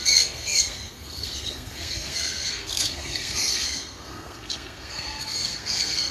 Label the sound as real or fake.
fake